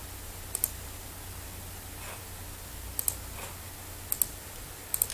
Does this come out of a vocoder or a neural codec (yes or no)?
no